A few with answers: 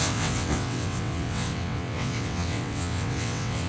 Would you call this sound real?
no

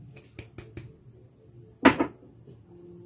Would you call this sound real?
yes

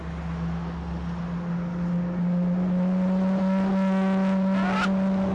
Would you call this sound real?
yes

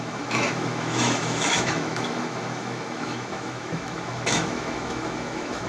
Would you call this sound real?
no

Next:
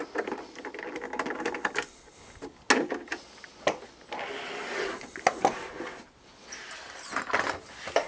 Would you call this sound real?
yes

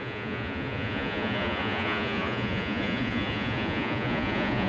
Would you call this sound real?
no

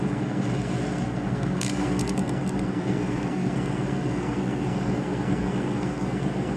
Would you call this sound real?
no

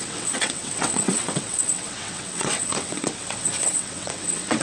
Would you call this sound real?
no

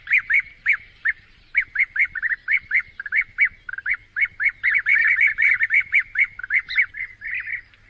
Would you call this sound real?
yes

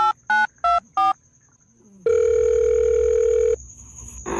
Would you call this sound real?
yes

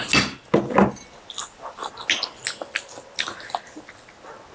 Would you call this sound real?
yes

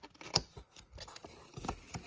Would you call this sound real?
yes